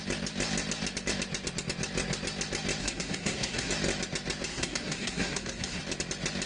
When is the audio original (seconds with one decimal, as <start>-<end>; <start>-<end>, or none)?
0.0-2.8; 3.7-4.5; 5.8-6.5